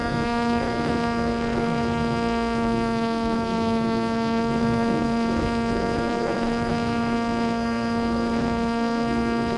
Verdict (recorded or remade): remade